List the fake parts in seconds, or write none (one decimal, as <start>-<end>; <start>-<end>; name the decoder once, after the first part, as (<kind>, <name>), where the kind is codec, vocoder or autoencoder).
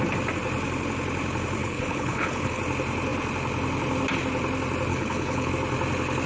1.6-2.6 (codec, HILCodec); 4.9-5.5